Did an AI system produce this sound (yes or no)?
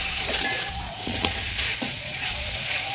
yes